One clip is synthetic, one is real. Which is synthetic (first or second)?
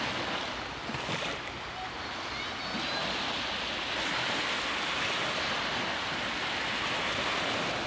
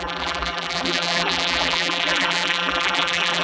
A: second